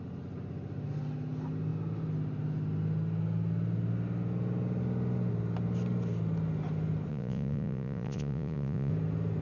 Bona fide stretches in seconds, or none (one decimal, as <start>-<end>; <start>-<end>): 0.0-7.1; 8.9-9.4